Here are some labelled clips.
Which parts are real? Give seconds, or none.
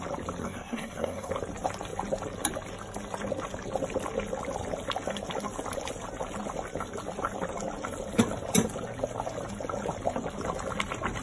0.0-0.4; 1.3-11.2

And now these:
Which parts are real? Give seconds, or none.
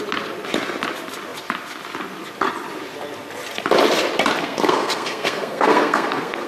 0.0-4.4